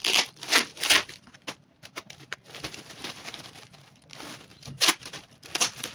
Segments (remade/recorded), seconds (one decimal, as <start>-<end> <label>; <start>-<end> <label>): 0.0-0.7 recorded; 0.7-3.8 remade; 3.8-4.5 recorded; 4.5-5.3 remade; 5.3-5.9 recorded